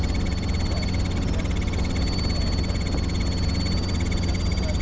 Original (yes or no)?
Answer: yes